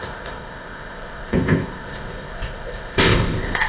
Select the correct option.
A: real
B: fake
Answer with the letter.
B